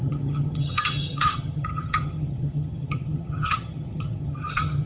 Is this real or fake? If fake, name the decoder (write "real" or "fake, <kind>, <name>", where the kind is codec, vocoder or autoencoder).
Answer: fake, vocoder, HiFi-GAN